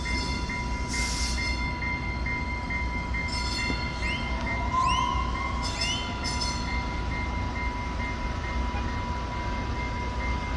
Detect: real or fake real